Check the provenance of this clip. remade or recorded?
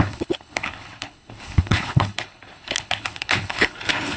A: remade